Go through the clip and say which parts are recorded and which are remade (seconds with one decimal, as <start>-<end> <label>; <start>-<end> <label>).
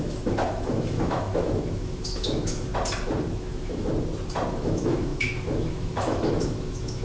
0.0-2.7 remade; 2.7-3.3 recorded; 3.3-3.9 remade; 3.9-4.5 recorded; 4.5-7.0 remade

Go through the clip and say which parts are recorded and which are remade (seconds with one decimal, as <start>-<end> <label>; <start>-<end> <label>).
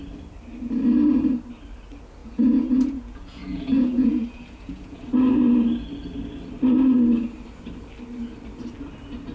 0.0-2.2 recorded; 2.2-5.0 remade; 5.0-9.3 recorded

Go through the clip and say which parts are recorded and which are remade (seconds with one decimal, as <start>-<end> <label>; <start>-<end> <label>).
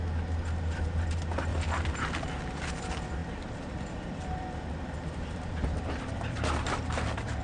0.0-1.5 recorded; 1.5-2.1 remade; 2.1-3.2 recorded; 3.2-7.4 remade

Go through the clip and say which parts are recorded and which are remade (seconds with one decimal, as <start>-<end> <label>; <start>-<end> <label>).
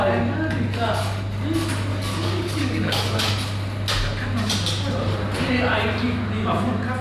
0.0-1.9 recorded; 1.9-3.3 remade; 3.3-7.0 recorded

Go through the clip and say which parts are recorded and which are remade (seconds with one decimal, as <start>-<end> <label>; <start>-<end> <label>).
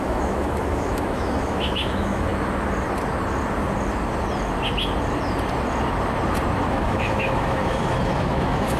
0.0-2.3 remade; 2.3-6.7 recorded; 6.7-8.8 remade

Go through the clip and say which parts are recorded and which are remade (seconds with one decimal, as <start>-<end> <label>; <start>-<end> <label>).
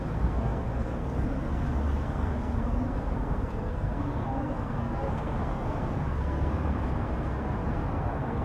0.0-8.4 remade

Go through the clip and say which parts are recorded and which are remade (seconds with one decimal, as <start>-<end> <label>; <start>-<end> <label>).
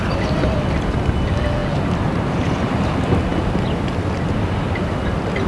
0.0-5.5 recorded